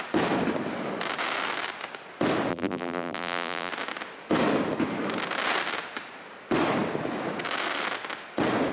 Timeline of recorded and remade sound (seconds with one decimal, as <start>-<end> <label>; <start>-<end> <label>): 0.0-2.5 recorded; 2.5-3.7 remade; 3.7-8.7 recorded